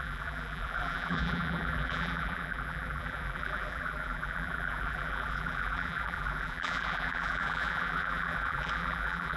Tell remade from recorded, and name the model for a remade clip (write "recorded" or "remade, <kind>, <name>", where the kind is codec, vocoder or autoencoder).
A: remade, vocoder, BigVGAN v2